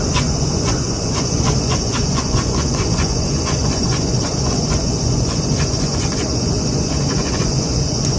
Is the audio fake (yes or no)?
yes